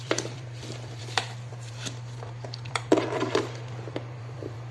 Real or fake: fake